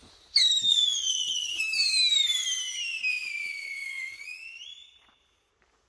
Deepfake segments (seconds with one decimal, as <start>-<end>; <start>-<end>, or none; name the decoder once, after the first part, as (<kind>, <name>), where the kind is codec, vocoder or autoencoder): 0.7-1.6 (vocoder, Vocos); 3.1-5.5

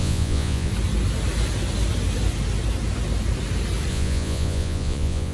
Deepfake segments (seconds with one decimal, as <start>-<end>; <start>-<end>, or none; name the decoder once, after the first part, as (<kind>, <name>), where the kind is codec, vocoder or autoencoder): 0.0-0.7 (vocoder, Vocos); 3.9-5.3

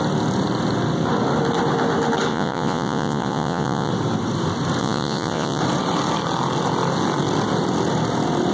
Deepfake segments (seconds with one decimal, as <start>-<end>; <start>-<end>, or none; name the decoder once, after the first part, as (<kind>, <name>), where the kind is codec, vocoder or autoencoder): 2.3-3.9 (vocoder, Vocos); 4.8-5.6

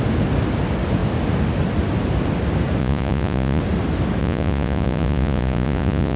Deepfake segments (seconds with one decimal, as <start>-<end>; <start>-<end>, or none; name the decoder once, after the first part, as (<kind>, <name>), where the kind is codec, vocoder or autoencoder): 2.8-3.6 (vocoder, Vocos); 4.2-6.2

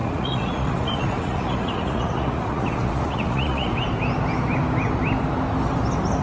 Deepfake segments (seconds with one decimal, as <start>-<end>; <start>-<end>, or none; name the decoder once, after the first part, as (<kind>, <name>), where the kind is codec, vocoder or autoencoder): 0.0-3.7 (vocoder, Vocos)